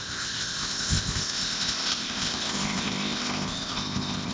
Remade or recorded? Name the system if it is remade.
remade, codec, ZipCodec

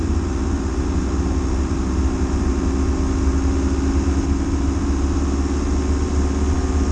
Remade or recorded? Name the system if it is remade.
recorded